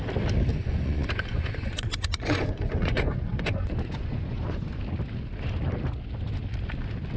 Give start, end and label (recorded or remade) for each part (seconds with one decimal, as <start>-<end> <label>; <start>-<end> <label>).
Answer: 0.0-0.5 recorded; 0.5-4.8 remade; 4.8-7.2 recorded